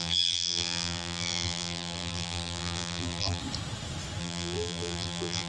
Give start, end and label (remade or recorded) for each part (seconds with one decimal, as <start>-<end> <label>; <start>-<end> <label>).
0.0-3.4 remade; 3.4-4.2 recorded; 4.2-5.5 remade